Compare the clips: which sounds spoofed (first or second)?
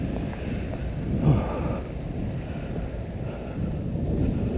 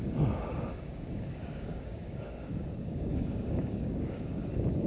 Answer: second